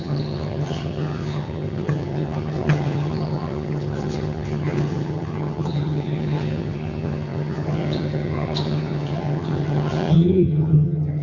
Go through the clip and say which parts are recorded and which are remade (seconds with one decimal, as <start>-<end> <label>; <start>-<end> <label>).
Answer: 0.0-11.2 remade

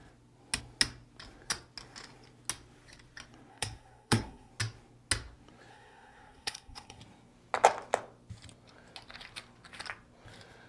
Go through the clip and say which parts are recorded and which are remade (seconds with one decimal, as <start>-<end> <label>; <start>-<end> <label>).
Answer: 0.0-3.5 recorded; 3.5-4.5 remade; 4.5-5.7 recorded; 5.7-7.0 remade; 7.0-10.7 recorded

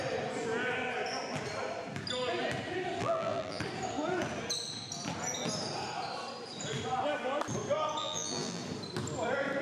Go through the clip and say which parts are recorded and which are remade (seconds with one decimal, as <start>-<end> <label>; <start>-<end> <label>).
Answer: 0.0-3.0 recorded; 3.0-3.6 remade; 3.6-8.0 recorded; 8.0-8.6 remade; 8.6-9.6 recorded